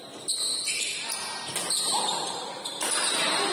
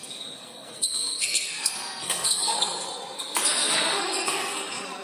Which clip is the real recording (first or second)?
first